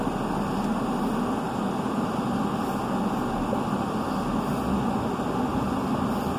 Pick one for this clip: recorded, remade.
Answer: recorded